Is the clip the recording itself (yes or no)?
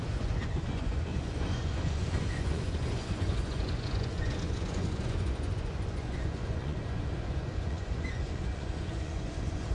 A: no